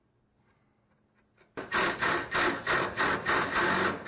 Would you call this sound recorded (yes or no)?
yes